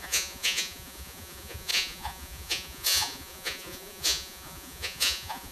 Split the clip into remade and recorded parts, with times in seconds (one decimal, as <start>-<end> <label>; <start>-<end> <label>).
0.0-5.5 remade